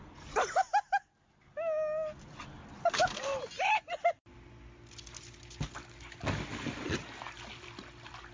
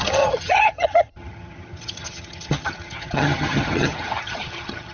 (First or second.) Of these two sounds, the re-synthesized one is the second